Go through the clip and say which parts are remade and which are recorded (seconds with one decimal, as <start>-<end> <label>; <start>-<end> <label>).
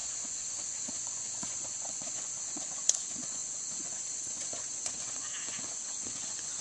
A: 0.0-6.6 remade